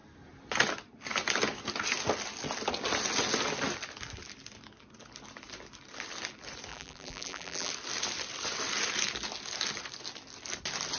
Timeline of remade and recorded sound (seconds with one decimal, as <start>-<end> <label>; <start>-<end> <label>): 0.0-6.7 recorded; 6.7-7.7 remade; 7.7-11.0 recorded